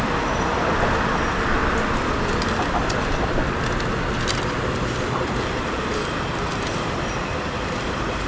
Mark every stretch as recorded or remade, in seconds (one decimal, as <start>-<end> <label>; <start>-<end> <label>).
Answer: 0.0-8.3 recorded

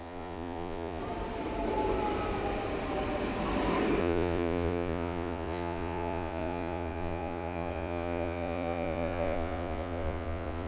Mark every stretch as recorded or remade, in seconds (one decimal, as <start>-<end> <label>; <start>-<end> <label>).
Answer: 0.0-1.0 remade; 1.0-4.0 recorded; 4.0-10.7 remade